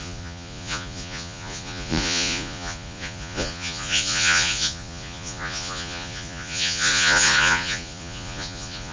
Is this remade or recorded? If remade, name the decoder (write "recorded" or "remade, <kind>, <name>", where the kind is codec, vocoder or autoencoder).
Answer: remade, vocoder, Vocos